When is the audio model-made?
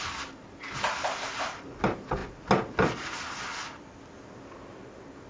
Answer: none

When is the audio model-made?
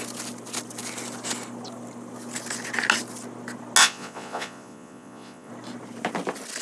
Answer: 3.8-5.5 (vocoder, Vocos)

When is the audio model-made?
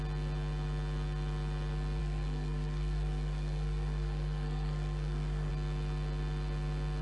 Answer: 2.0-5.5 (codec, SNAC)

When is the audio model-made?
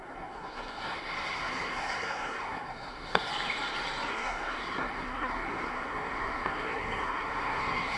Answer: 0.0-3.3 (codec, SNAC); 4.1-8.0